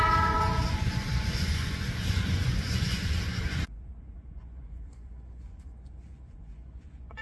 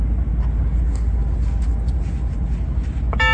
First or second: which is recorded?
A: second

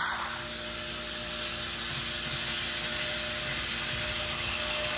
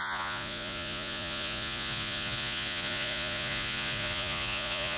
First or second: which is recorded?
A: first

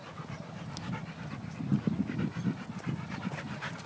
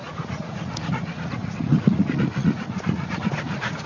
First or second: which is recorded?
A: first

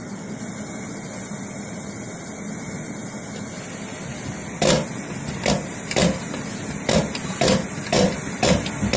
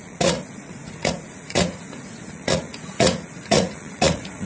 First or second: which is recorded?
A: first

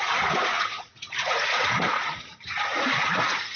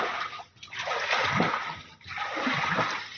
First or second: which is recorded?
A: second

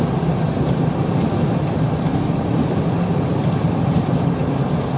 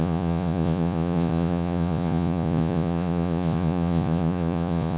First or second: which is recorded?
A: first